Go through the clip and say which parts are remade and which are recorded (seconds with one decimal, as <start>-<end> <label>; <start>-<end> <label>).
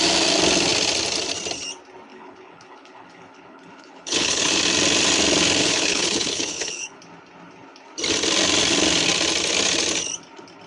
0.0-2.1 recorded; 2.1-4.6 remade; 4.6-5.6 recorded; 5.6-7.0 remade; 7.0-10.7 recorded